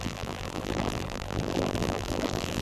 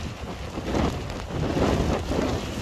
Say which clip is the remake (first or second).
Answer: first